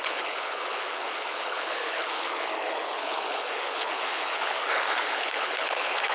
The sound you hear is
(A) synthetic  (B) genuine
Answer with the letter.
A